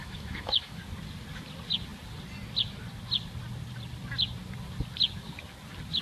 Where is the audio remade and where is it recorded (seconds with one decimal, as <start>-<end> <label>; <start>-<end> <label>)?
0.0-0.8 remade; 0.8-6.0 recorded

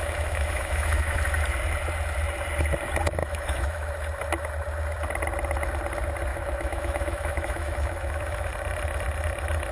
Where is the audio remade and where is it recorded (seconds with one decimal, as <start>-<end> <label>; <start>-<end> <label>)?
0.0-1.2 remade; 1.2-3.2 recorded; 3.2-3.9 remade; 3.9-6.3 recorded; 6.3-8.5 remade; 8.5-9.7 recorded

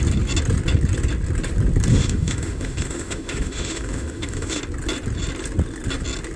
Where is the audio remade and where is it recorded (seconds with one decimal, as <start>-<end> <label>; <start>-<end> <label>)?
0.0-1.9 recorded; 1.9-4.6 remade; 4.6-6.4 recorded